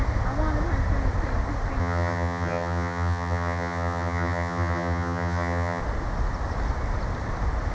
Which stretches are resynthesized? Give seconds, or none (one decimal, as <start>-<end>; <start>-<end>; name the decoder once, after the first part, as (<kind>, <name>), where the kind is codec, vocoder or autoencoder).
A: 1.8-5.8 (vocoder, HiFi-GAN)